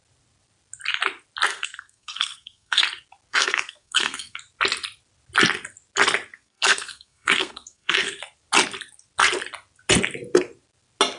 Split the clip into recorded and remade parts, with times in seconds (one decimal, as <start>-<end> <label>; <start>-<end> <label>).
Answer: 0.0-1.5 recorded; 1.5-2.8 remade; 2.8-3.3 recorded; 3.3-4.4 remade; 4.4-6.3 recorded; 6.3-8.2 remade; 8.2-11.2 recorded